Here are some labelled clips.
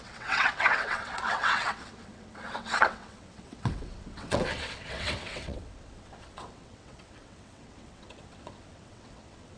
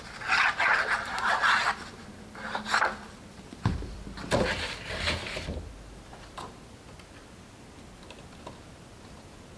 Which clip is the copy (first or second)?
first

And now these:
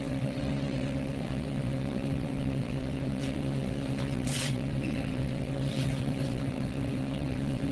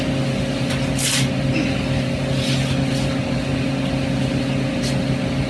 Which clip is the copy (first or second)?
first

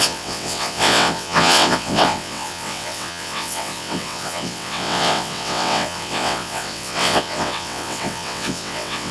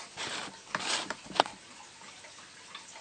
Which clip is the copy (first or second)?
first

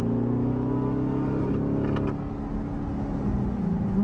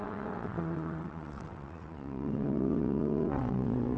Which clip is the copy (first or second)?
second